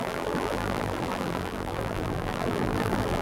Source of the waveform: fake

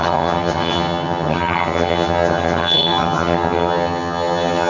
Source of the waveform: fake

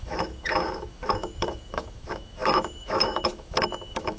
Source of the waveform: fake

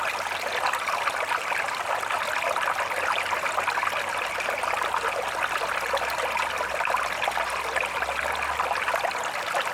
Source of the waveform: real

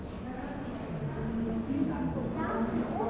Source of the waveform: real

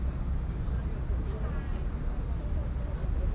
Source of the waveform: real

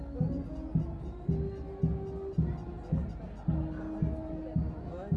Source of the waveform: real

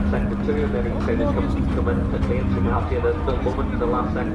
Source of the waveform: real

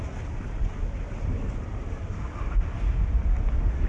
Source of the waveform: real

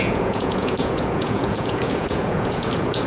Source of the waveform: fake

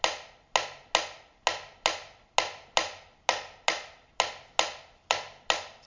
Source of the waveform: real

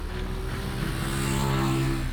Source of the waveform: real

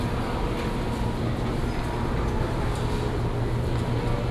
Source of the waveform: real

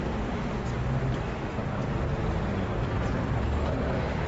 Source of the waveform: real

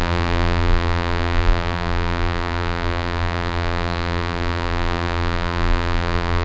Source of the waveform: fake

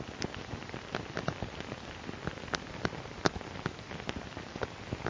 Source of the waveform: real